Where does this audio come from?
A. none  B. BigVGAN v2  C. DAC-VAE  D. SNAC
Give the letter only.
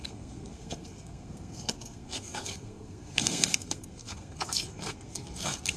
D